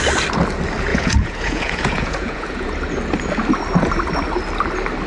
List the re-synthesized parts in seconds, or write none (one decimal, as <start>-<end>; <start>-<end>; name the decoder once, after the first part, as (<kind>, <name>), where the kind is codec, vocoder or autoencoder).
0.9-2.7 (vocoder, Vocos)